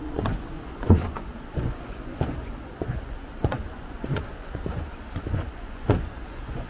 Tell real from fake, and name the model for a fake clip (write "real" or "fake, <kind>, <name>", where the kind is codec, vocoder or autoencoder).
fake, vocoder, Vocos